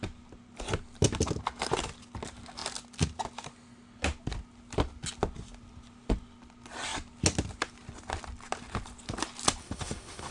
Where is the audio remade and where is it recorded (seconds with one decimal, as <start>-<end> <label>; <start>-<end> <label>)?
0.0-9.6 recorded; 9.6-10.3 remade